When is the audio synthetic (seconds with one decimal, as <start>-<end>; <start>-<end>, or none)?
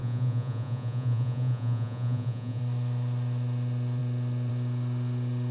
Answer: 0.0-2.6